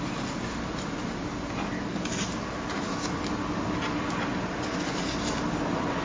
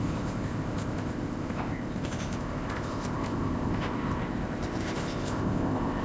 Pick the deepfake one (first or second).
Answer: second